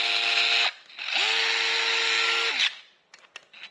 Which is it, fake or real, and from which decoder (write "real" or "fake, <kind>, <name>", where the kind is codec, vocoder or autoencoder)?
real